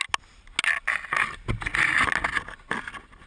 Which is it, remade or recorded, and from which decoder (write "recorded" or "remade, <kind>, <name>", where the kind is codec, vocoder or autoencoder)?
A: recorded